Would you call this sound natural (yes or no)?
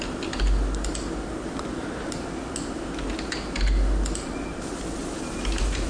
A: yes